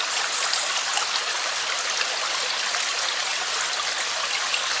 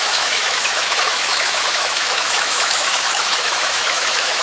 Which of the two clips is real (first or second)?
first